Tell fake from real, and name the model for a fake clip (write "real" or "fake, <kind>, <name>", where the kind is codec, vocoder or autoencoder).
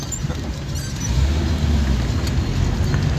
real